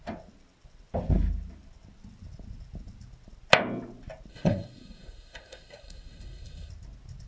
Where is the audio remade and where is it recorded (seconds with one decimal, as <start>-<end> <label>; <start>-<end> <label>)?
0.0-4.3 recorded; 4.3-6.7 remade; 6.7-7.3 recorded